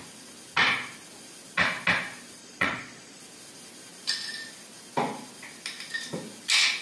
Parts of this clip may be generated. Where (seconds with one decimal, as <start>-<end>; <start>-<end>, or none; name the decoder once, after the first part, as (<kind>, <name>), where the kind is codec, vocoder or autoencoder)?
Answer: 2.4-3.2 (vocoder, Vocos)